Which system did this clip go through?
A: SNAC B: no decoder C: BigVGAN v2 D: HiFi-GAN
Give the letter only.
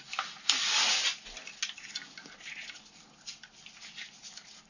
B